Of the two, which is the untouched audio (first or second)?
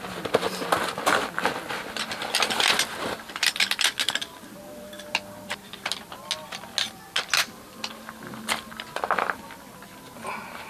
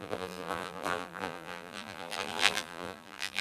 first